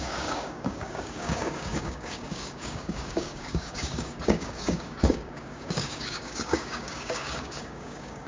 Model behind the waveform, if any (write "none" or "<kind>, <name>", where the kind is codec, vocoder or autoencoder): codec, DAC